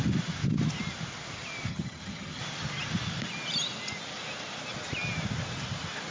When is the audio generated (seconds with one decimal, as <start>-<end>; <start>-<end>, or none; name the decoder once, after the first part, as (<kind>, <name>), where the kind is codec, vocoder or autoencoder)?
1.7-2.4 (vocoder, HiFi-GAN)